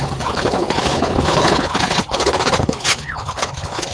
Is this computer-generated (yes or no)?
yes